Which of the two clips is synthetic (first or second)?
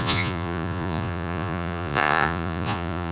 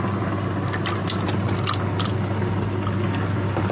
first